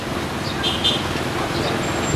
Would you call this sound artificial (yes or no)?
no